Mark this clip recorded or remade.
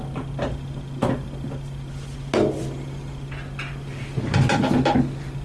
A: recorded